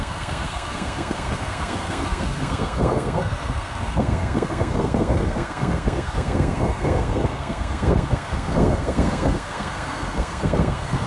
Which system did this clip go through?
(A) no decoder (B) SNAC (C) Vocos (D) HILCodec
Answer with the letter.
B